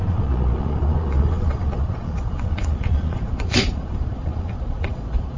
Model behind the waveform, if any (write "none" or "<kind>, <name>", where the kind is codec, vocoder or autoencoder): vocoder, Vocos